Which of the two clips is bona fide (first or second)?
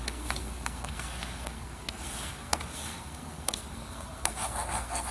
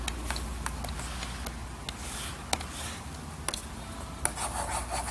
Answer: second